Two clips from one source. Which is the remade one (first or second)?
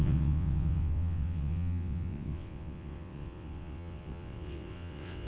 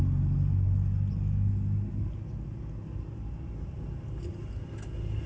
first